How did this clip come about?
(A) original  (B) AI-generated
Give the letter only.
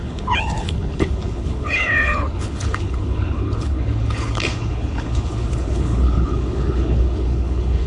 B